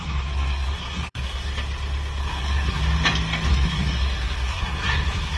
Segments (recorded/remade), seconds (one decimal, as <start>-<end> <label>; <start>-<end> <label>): 0.0-1.5 remade; 1.5-2.2 recorded; 2.2-2.8 remade; 2.8-3.5 recorded; 3.5-5.4 remade